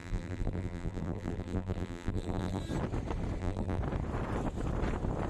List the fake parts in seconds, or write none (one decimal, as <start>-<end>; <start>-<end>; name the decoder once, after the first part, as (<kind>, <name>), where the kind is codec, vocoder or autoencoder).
0.0-2.6 (vocoder, BigVGAN v2); 3.4-3.8